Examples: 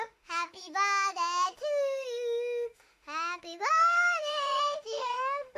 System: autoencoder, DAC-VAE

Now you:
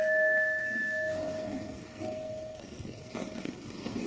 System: codec, SNAC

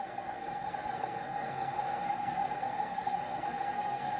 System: codec, SNAC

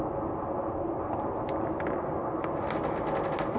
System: none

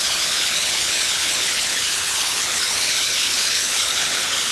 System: codec, HILCodec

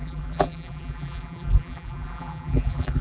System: vocoder, BigVGAN v2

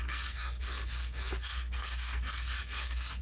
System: codec, SNAC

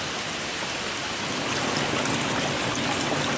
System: none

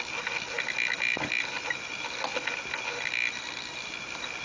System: none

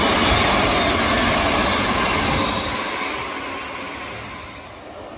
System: none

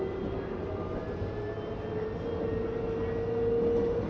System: none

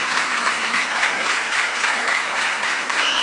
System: codec, SNAC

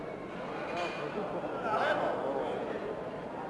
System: none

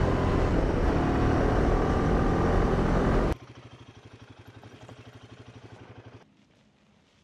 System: none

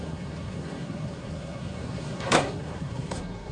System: codec, SNAC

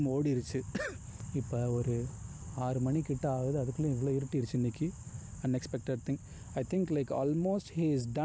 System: vocoder, BigVGAN v2